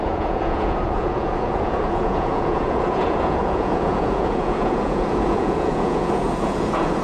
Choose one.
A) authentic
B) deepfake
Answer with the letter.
B